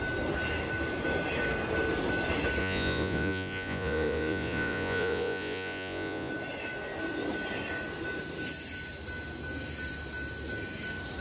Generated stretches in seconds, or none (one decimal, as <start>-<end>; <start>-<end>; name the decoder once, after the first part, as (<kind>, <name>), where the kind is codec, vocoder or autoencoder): 2.6-6.3 (vocoder, Vocos)